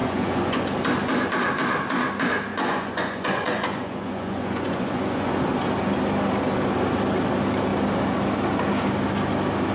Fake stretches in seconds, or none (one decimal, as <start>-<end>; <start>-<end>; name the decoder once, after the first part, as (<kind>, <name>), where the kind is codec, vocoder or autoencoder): 0.0-0.6 (vocoder, Vocos); 2.5-5.4